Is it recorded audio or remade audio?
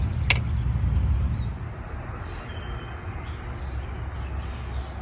recorded